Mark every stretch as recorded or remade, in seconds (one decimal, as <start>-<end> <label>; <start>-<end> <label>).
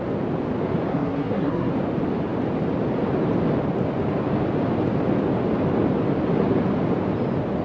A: 0.0-0.9 recorded; 0.9-1.7 remade; 1.7-7.6 recorded